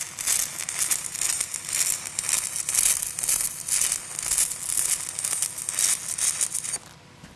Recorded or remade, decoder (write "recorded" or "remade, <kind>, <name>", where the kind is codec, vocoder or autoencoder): recorded